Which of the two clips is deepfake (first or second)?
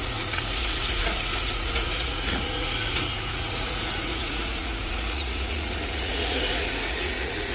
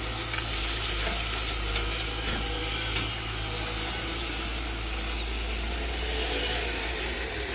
first